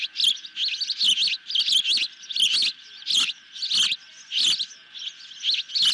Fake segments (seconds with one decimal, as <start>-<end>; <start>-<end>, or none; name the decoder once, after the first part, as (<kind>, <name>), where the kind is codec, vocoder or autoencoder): none